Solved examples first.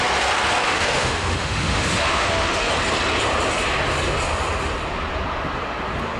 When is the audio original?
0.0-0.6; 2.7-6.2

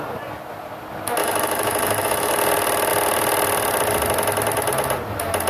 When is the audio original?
0.0-1.2; 2.4-5.5

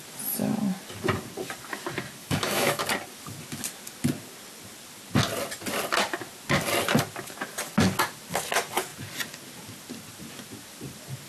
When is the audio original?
0.0-2.2; 2.8-11.3

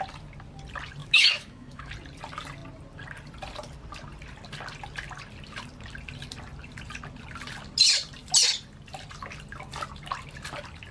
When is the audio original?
0.0-1.0; 1.9-10.9